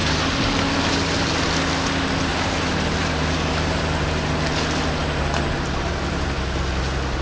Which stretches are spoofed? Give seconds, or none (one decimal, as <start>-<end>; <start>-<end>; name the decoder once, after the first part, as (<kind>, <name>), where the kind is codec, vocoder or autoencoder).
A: 2.3-4.3 (vocoder, BigVGAN v2)